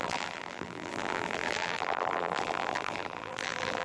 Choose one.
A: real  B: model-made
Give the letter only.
B